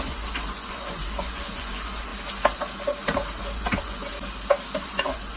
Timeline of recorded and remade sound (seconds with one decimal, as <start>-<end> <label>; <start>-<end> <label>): 0.0-2.1 remade; 2.1-3.5 recorded; 3.5-4.1 remade; 4.1-4.8 recorded; 4.8-5.4 remade